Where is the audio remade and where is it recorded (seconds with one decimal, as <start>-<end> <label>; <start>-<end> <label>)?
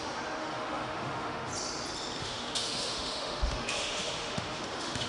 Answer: 0.0-0.4 recorded; 0.4-1.5 remade; 1.5-2.2 recorded; 2.2-5.1 remade